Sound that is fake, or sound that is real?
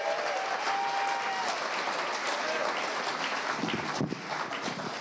real